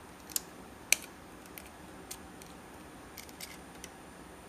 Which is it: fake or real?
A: real